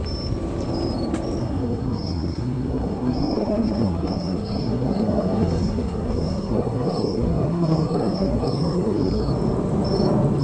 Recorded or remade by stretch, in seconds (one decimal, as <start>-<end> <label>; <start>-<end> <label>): 0.0-1.4 recorded; 1.4-9.3 remade; 9.3-10.4 recorded

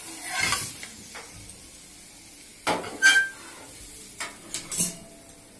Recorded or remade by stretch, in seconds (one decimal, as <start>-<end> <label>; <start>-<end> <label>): 0.0-5.6 recorded